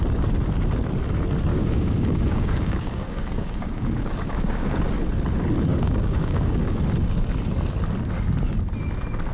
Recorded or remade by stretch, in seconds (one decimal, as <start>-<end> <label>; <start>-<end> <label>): 0.0-1.5 recorded; 1.5-4.8 remade; 4.8-5.7 recorded; 5.7-6.8 remade; 6.8-9.3 recorded